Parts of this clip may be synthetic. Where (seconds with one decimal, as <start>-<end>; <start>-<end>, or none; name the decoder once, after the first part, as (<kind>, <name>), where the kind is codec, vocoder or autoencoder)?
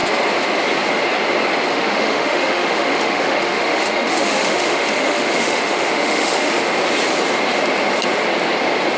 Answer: 1.7-6.6 (autoencoder, DAC-VAE)